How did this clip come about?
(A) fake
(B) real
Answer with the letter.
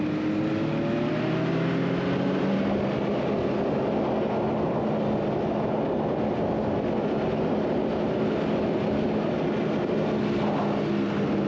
B